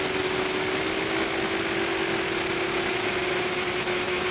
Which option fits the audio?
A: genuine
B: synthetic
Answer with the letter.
A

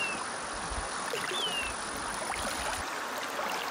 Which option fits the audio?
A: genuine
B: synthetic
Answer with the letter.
A